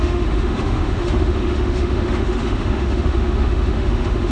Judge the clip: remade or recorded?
remade